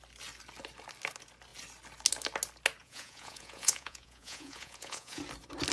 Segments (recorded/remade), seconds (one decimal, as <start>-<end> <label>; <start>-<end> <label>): 0.0-2.8 recorded; 2.8-5.2 remade; 5.2-5.7 recorded